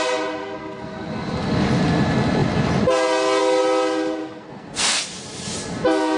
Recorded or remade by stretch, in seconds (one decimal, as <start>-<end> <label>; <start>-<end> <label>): 0.0-0.4 recorded; 0.4-1.1 remade; 1.1-4.2 recorded; 4.2-5.0 remade; 5.0-6.2 recorded